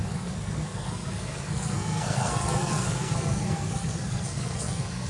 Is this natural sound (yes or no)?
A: no